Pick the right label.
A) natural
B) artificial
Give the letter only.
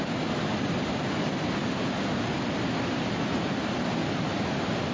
A